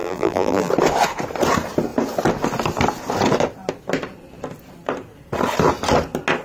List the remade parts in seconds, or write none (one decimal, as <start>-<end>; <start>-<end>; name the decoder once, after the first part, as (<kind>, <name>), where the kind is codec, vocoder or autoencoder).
0.0-0.7 (vocoder, BigVGAN v2)